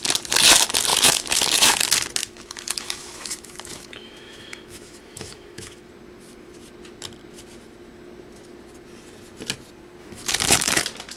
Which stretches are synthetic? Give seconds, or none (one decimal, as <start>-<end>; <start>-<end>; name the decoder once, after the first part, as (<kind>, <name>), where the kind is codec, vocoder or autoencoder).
0.9-1.8 (autoencoder, DAC-VAE); 2.2-5.9; 10.0-10.7